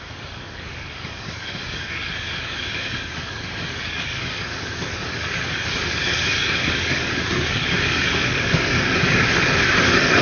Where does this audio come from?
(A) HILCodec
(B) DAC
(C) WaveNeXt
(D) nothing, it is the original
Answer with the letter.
B